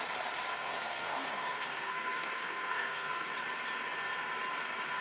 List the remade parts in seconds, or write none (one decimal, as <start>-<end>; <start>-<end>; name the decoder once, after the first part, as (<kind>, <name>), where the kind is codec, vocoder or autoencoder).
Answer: 0.5-3.3 (codec, SNAC)